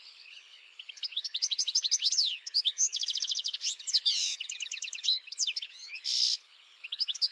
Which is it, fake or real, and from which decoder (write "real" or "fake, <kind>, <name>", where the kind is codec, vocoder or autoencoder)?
fake, codec, HILCodec